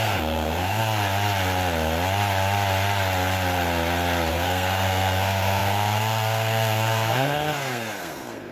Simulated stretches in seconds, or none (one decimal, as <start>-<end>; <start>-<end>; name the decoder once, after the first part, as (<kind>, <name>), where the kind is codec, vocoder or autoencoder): 0.0-0.8 (codec, SNAC); 4.3-8.5